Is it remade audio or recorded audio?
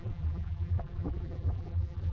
remade